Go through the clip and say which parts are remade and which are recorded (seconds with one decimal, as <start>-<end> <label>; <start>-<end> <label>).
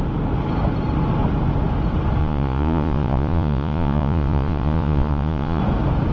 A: 0.0-2.2 recorded; 2.2-5.6 remade; 5.6-6.1 recorded